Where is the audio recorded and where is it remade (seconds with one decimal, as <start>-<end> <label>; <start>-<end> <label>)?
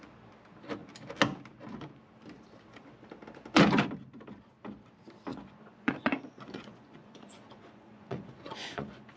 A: 0.0-5.3 recorded; 5.3-9.2 remade